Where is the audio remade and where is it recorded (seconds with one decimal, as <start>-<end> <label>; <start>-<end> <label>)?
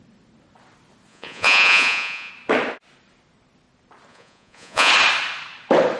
0.0-1.1 recorded; 1.1-2.3 remade; 2.3-4.1 recorded; 4.1-4.9 remade; 4.9-6.0 recorded